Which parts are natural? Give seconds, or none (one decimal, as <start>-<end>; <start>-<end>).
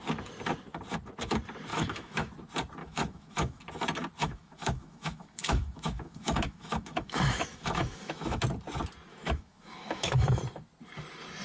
0.0-1.7; 2.3-2.8; 3.6-4.2; 8.4-9.1; 10.4-11.4